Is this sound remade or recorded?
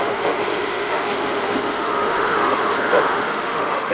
remade